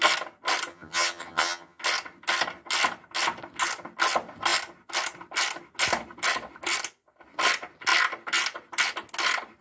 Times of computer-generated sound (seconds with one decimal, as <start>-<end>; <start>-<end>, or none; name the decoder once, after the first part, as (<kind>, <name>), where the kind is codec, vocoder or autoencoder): 0.7-1.8 (vocoder, HiFi-GAN)

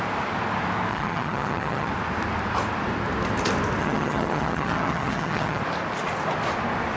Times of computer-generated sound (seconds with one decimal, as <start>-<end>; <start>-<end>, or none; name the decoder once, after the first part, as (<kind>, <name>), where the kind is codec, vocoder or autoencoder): 0.9-1.9 (vocoder, HiFi-GAN); 3.8-5.6

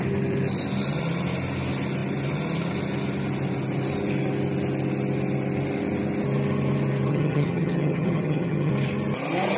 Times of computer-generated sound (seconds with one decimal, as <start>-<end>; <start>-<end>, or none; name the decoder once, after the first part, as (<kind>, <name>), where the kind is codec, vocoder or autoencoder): 7.1-8.7 (vocoder, HiFi-GAN)